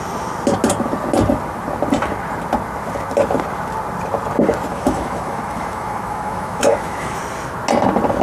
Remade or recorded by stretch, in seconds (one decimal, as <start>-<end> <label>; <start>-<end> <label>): 0.0-4.7 recorded; 4.7-7.2 remade; 7.2-8.2 recorded